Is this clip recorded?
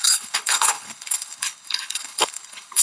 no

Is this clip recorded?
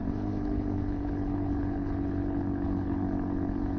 no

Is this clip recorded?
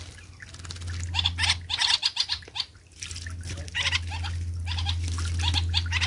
yes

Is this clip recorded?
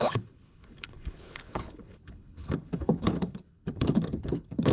no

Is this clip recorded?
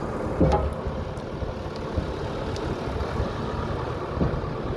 yes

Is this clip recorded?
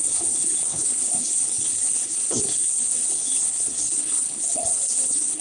no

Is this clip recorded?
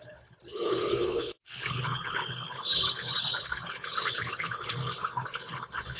no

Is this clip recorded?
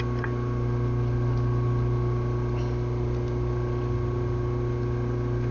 yes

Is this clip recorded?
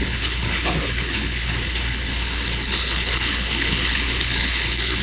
no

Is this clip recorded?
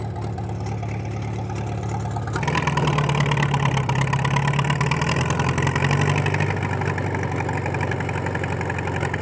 yes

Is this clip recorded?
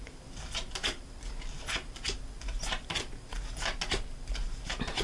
yes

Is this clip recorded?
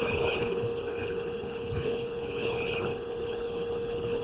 no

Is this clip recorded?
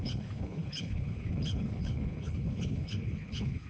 no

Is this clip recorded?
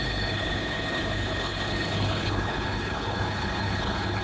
no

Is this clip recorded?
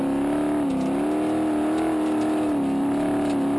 yes